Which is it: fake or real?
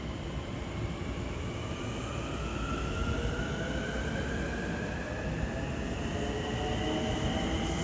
real